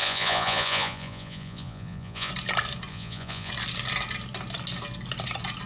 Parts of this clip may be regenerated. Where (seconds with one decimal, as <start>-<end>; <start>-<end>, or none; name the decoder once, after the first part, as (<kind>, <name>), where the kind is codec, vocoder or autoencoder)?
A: 0.0-2.3 (vocoder, Vocos); 2.9-3.5